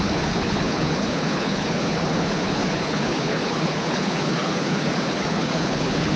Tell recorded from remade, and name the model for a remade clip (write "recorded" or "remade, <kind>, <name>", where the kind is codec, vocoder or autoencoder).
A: remade, codec, HILCodec